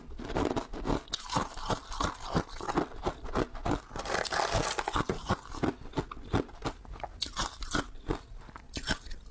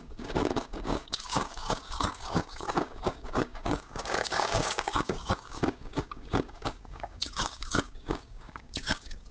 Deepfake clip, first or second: second